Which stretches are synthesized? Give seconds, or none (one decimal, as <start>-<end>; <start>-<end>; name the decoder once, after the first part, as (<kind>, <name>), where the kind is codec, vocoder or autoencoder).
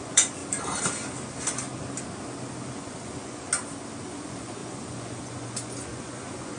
0.0-0.4 (vocoder, Vocos); 2.7-3.5; 4.1-6.6